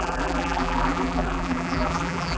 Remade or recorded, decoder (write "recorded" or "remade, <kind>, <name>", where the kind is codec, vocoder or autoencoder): remade, vocoder, BigVGAN v2